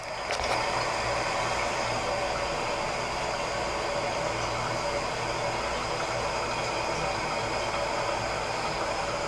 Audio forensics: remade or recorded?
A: recorded